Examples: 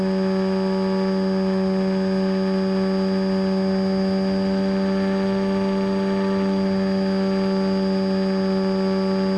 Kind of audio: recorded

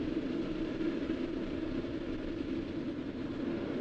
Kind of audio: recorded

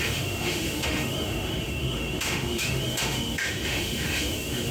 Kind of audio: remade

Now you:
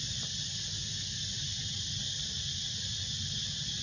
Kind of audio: recorded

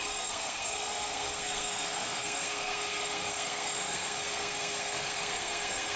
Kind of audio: remade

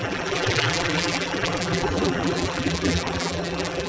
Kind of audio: remade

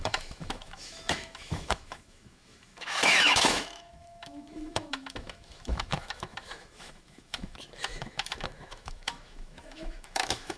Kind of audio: remade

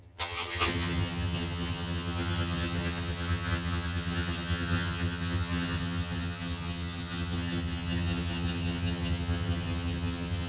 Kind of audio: remade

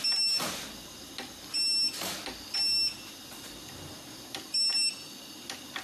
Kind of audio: recorded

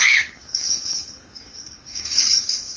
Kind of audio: remade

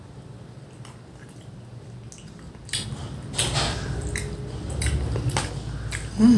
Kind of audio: recorded